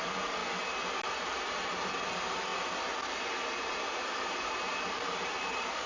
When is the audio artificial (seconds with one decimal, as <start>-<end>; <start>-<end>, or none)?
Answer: 0.0-0.4; 1.1-5.9